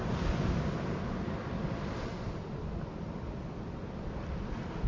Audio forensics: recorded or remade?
recorded